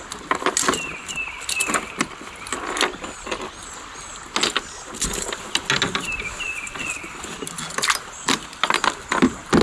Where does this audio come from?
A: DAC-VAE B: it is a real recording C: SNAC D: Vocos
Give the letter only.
B